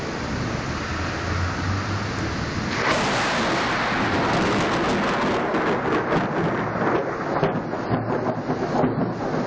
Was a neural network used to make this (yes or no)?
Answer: no